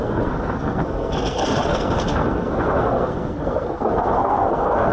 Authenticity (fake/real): fake